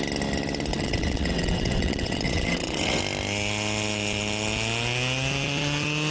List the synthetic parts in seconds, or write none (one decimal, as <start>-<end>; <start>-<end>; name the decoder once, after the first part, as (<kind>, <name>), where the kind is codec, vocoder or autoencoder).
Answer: 0.7-3.0 (vocoder, WaveNeXt)